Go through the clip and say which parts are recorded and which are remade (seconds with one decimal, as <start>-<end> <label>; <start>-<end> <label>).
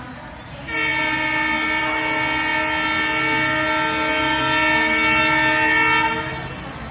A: 0.0-6.9 recorded